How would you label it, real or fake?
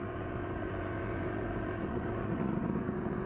fake